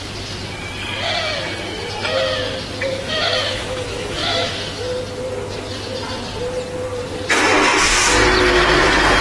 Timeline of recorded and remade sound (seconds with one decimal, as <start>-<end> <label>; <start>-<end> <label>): 0.0-2.9 recorded; 2.9-4.9 remade; 4.9-9.2 recorded

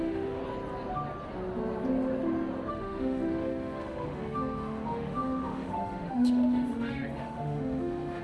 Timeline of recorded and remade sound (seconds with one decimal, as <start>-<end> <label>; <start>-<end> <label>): 0.0-0.4 remade; 0.4-2.7 recorded; 2.7-8.2 remade

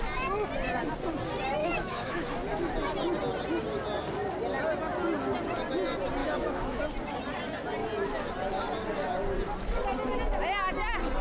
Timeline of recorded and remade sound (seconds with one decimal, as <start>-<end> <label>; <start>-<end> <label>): 0.0-1.6 recorded; 1.6-2.3 remade; 2.3-6.2 recorded; 6.2-6.8 remade; 6.8-11.2 recorded

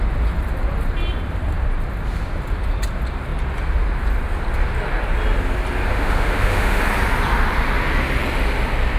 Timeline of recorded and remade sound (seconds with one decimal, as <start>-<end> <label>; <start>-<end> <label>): 0.0-5.9 recorded; 5.9-6.8 remade; 6.8-9.0 recorded